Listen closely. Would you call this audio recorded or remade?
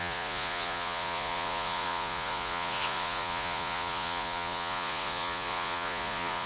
remade